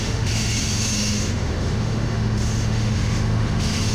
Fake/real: fake